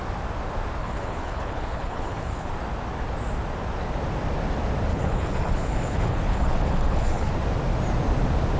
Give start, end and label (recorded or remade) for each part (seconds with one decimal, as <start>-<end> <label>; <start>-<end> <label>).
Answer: 0.0-0.8 recorded; 0.8-2.5 remade; 2.5-4.9 recorded; 4.9-7.3 remade; 7.3-8.6 recorded